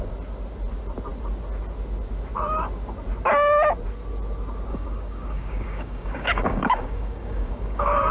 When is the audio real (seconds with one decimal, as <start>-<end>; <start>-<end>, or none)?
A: 0.0-4.7